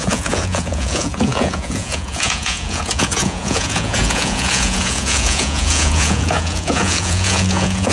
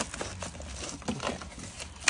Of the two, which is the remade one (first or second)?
first